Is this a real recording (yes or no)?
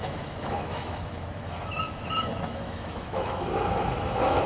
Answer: no